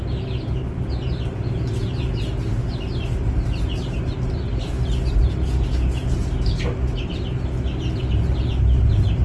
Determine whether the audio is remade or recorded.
recorded